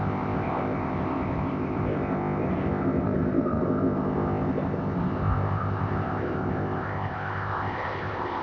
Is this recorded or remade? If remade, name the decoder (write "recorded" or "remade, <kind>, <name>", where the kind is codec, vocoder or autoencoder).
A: remade, codec, ZipCodec